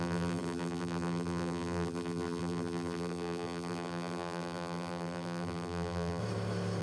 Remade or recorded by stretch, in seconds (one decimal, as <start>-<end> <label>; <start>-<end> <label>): 0.0-6.2 remade; 6.2-6.8 recorded